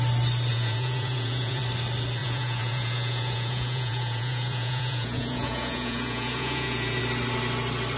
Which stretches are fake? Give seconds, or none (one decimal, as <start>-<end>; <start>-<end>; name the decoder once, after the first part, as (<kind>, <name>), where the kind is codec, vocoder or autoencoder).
0.5-1.6 (vocoder, Vocos); 2.2-7.0